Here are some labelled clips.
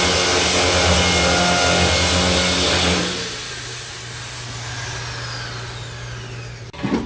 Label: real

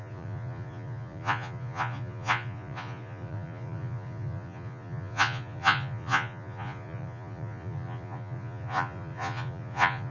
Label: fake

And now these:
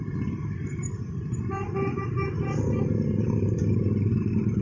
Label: real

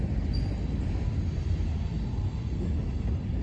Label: real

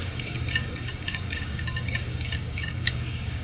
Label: fake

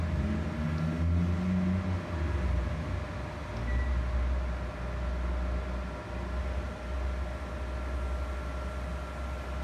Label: real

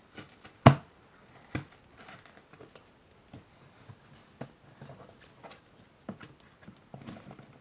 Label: real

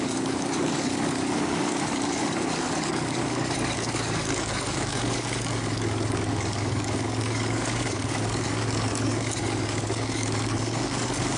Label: fake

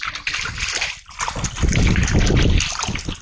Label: real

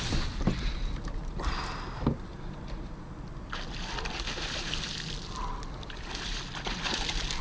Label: real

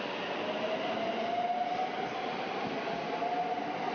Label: real